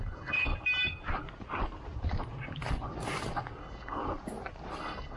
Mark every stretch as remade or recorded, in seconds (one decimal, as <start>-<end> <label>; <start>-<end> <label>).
0.0-0.5 remade; 0.5-3.6 recorded; 3.6-4.0 remade; 4.0-4.8 recorded; 4.8-5.2 remade